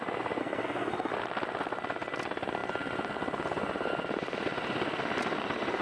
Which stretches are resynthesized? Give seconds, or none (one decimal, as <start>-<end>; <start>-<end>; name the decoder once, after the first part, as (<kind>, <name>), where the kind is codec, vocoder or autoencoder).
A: 0.4-1.1 (codec, SNAC)